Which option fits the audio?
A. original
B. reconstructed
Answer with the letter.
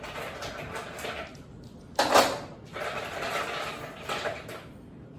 A